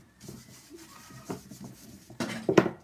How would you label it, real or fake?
fake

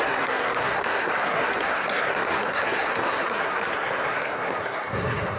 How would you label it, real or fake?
fake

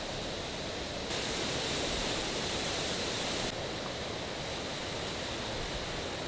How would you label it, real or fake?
real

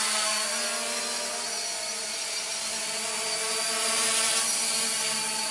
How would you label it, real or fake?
real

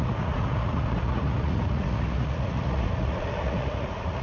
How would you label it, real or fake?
fake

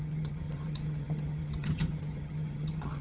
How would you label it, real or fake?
fake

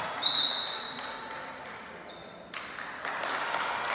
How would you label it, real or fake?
real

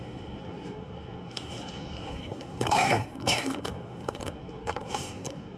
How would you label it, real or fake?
fake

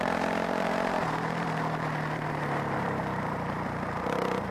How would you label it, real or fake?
fake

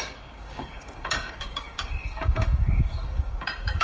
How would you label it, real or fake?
fake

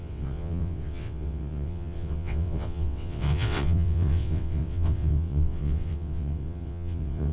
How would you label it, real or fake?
fake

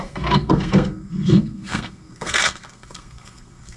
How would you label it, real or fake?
fake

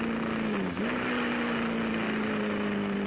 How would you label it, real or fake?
real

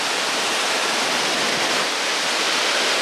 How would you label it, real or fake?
real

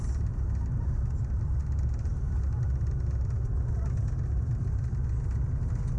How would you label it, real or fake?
real